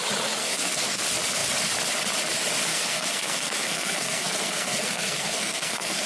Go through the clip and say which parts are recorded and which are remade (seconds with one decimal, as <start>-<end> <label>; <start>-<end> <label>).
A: 0.0-0.4 recorded; 0.4-1.0 remade; 1.0-2.7 recorded; 2.7-6.1 remade